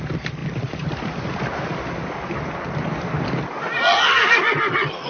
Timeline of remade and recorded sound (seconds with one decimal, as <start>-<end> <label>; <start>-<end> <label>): 0.0-5.1 recorded